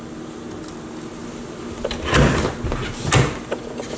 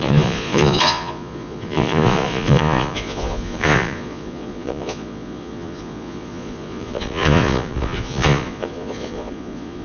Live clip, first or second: first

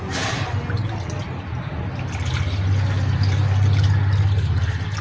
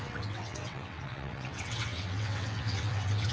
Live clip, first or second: first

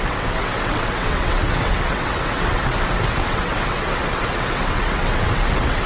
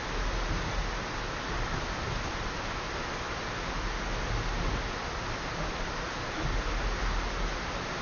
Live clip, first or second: second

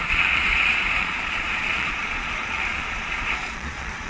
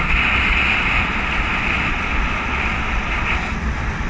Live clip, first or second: second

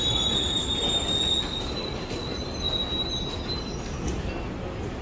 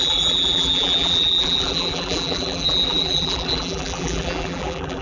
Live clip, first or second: first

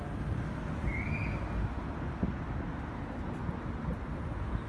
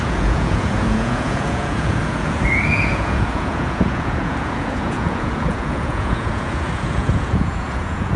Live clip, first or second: first